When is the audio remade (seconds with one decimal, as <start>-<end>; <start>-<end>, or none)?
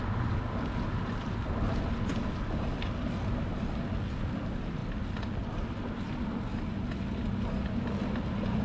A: none